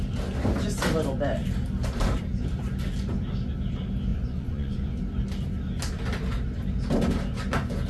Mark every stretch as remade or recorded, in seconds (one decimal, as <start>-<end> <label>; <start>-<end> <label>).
0.0-4.1 recorded; 4.1-4.9 remade; 4.9-7.9 recorded

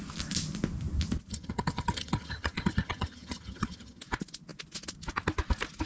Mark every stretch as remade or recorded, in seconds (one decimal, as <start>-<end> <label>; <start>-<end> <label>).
0.0-1.3 recorded; 1.3-4.0 remade; 4.0-5.9 recorded

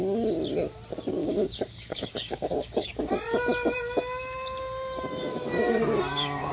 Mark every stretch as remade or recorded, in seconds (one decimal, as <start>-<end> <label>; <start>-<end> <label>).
0.0-1.2 recorded; 1.2-3.1 remade; 3.1-5.1 recorded; 5.1-6.5 remade